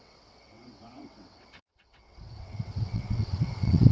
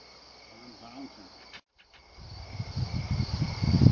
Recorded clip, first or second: second